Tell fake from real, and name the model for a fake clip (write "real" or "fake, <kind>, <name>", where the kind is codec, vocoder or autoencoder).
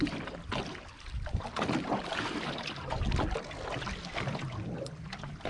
real